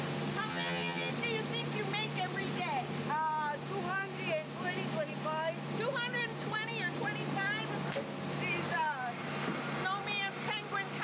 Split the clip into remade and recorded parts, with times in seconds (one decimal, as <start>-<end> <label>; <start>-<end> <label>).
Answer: 0.0-0.5 recorded; 0.5-1.1 remade; 1.1-11.0 recorded